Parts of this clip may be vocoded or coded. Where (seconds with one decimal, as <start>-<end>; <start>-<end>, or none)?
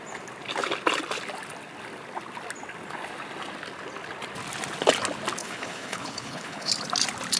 5.4-6.7